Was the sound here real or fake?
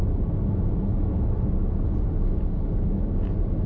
real